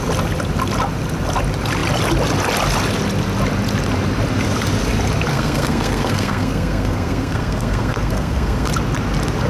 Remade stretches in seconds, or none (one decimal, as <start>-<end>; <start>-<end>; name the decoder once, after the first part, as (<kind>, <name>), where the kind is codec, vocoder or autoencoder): 5.3-8.7 (codec, SNAC)